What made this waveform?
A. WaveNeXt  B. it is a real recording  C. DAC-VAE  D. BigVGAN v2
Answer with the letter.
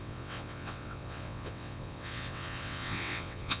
A